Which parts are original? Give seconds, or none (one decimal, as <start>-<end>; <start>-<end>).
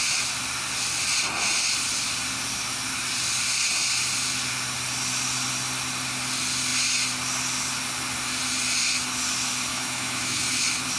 0.0-9.7; 10.6-11.0